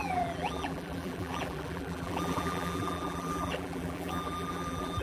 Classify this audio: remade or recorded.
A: remade